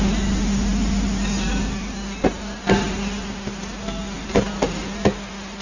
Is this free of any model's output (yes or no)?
yes